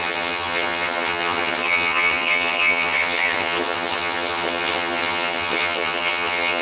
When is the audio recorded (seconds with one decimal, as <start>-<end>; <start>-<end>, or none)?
none